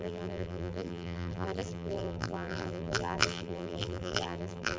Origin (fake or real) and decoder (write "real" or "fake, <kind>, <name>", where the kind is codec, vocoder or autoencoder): fake, vocoder, BigVGAN v2